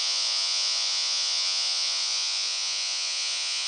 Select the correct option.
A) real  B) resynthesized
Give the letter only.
B